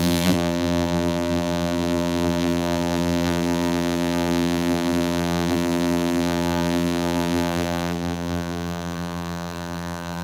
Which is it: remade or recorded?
remade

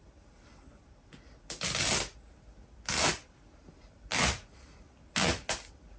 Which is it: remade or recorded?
recorded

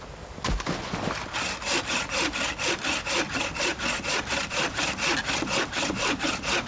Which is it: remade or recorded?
recorded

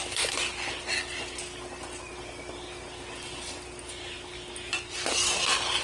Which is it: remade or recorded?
recorded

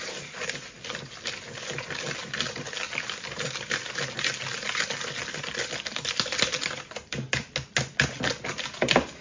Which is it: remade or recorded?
recorded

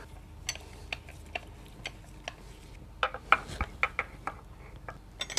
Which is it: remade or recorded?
recorded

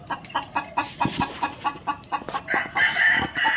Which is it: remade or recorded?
recorded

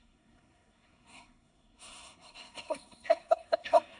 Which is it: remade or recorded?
remade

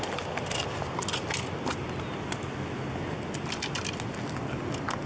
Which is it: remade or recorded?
recorded